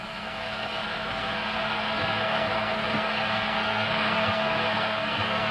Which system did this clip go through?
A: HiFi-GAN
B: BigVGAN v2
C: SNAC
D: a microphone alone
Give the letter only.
C